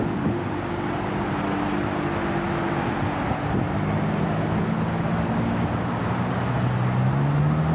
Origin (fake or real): real